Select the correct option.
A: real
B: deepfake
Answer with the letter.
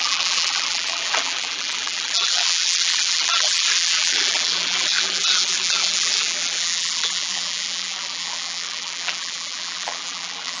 B